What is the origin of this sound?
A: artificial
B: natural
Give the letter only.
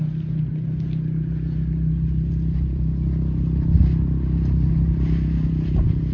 B